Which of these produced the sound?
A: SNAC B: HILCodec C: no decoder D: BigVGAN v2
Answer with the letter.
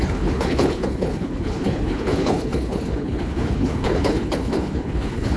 B